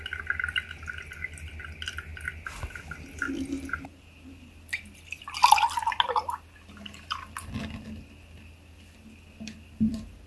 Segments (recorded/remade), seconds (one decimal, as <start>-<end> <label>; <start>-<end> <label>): 0.0-2.1 remade; 2.1-4.1 recorded; 4.1-5.4 remade; 5.4-6.7 recorded; 6.7-10.3 remade